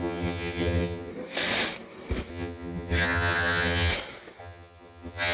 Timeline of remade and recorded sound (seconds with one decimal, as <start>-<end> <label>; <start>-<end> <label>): 0.0-1.1 remade; 1.1-2.3 recorded; 2.3-3.9 remade; 3.9-4.4 recorded; 4.4-5.3 remade